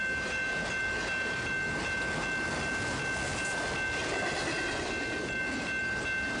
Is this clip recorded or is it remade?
recorded